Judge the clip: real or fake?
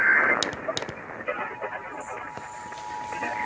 real